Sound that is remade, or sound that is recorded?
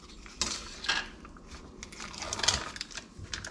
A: recorded